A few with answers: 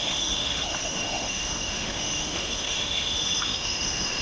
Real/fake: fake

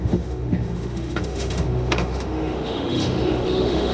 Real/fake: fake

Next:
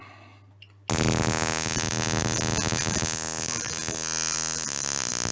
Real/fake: real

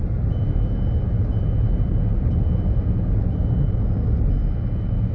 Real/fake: real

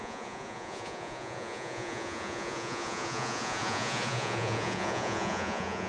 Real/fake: fake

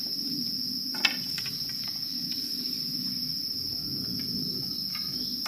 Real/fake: real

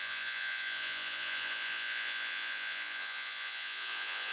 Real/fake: fake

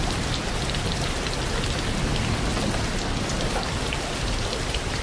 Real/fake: real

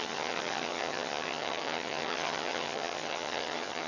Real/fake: fake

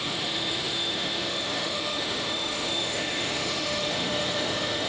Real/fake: fake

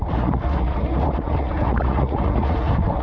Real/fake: fake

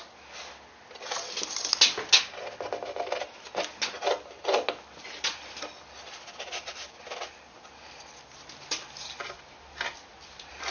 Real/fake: real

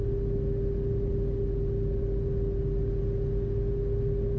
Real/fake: real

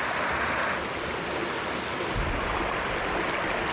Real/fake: real